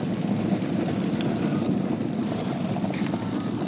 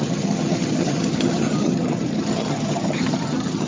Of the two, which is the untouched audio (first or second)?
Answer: first